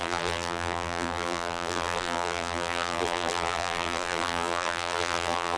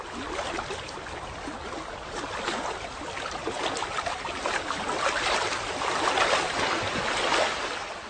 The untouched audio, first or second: second